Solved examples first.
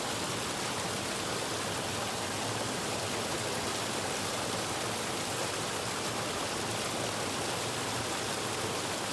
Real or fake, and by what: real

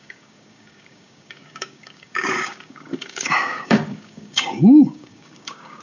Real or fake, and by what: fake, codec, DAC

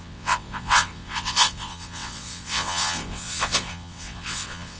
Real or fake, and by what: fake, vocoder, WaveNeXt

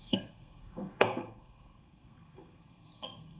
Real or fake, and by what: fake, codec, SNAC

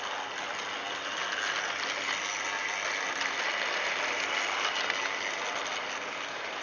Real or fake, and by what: real